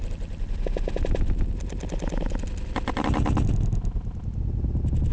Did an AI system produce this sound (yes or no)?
no